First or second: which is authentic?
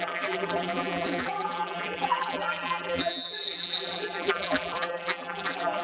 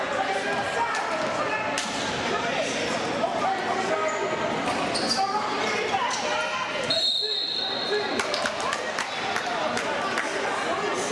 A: second